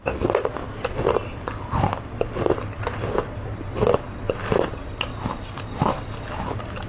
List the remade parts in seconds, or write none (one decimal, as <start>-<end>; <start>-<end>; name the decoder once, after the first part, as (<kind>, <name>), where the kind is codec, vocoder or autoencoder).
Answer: 5.1-6.1 (vocoder, BigVGAN v2)